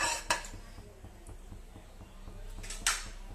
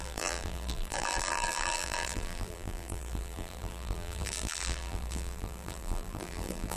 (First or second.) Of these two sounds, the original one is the first